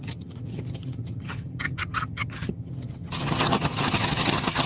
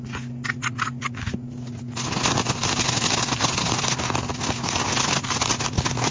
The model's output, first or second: first